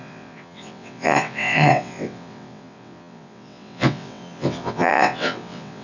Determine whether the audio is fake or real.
fake